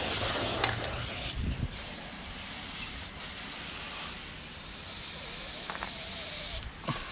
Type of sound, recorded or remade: recorded